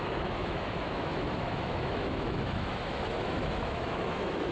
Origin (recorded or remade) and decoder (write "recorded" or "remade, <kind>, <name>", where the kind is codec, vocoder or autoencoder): remade, autoencoder, DAC-VAE